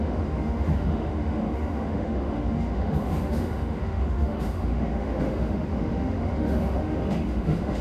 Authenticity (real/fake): fake